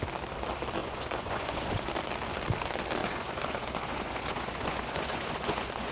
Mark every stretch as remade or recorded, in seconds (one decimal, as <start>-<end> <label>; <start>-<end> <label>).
0.0-0.8 recorded; 0.8-1.9 remade; 1.9-3.0 recorded; 3.0-5.9 remade